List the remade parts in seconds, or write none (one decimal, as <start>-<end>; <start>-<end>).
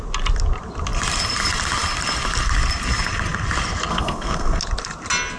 3.9-4.6